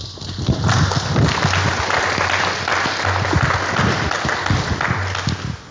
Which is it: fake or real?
real